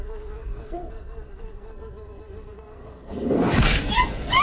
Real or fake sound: fake